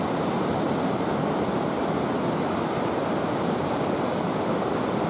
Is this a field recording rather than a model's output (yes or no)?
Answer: yes